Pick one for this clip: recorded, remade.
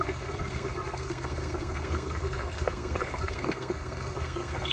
remade